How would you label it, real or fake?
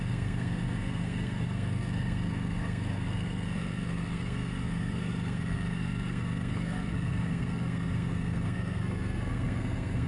fake